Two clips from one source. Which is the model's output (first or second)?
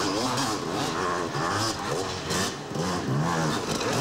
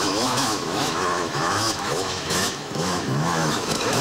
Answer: second